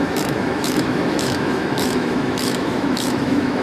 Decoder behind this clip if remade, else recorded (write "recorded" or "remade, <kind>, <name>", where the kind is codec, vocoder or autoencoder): remade, autoencoder, DAC-VAE